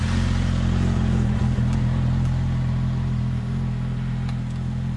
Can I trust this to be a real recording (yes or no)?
yes